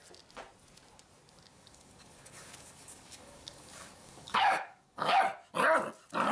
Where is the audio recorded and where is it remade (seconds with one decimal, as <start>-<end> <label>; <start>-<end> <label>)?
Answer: 0.0-1.5 recorded; 1.5-5.2 remade; 5.2-6.3 recorded

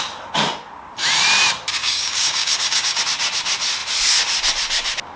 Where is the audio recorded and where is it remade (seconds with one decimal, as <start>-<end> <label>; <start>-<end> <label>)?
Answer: 0.0-1.8 recorded; 1.8-3.0 remade; 3.0-5.2 recorded

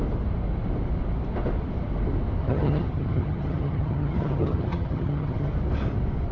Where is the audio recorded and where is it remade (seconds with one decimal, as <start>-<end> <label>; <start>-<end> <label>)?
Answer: 0.0-2.4 recorded; 2.4-5.5 remade; 5.5-6.3 recorded

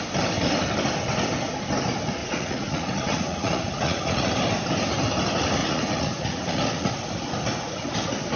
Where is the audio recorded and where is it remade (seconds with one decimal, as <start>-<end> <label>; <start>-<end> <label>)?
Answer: 0.0-2.2 recorded; 2.2-4.3 remade; 4.3-5.6 recorded; 5.6-6.9 remade; 6.9-8.4 recorded

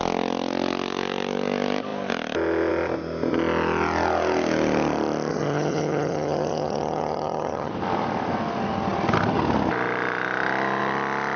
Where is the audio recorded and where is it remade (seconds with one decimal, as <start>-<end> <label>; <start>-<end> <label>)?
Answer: 0.0-5.3 recorded; 5.3-7.7 remade; 7.7-11.4 recorded

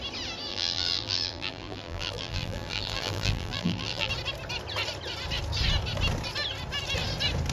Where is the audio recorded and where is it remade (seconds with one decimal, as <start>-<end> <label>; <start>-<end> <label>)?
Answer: 0.0-0.5 recorded; 0.5-4.1 remade; 4.1-7.5 recorded

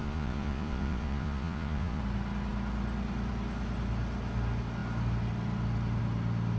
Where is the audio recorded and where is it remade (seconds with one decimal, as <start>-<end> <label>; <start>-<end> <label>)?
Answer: 0.0-2.0 remade; 2.0-6.6 recorded